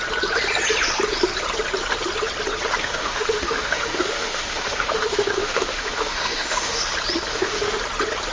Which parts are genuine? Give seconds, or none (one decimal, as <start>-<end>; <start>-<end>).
0.0-2.8; 6.8-7.3; 7.8-8.3